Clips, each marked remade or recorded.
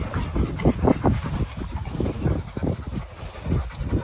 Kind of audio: recorded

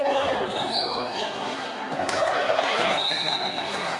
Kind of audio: remade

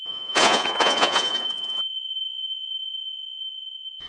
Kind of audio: remade